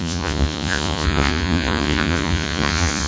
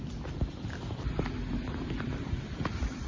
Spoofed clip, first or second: first